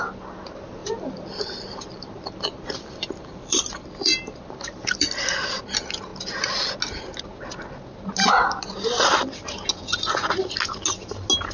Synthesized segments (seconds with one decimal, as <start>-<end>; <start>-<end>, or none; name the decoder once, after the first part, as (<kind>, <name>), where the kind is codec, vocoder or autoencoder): 0.8-5.4 (vocoder, BigVGAN v2)